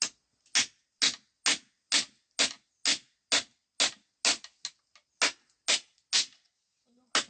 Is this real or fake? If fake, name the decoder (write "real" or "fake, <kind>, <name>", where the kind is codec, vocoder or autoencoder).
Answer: real